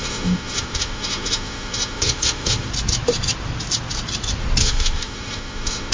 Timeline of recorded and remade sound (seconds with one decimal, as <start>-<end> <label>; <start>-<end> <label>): 0.0-2.7 remade; 2.7-4.6 recorded; 4.6-5.9 remade